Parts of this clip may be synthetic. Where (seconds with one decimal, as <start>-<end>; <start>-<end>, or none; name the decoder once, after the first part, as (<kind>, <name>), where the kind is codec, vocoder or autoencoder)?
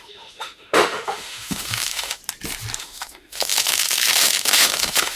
0.0-2.2 (autoencoder, DAC-VAE); 2.8-5.2